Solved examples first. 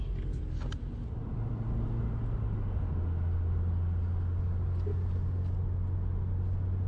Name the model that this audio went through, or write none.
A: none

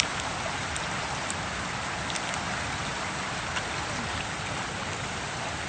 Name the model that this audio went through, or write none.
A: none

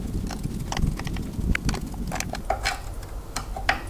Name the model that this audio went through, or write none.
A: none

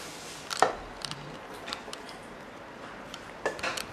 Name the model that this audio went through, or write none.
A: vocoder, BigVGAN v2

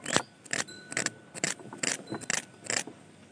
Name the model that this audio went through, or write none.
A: none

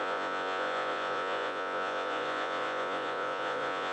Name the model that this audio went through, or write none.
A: vocoder, Vocos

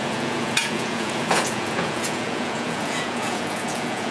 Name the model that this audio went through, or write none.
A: vocoder, Vocos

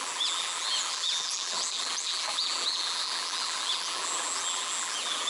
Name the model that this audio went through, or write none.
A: vocoder, BigVGAN v2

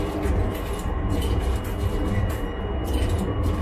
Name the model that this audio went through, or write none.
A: none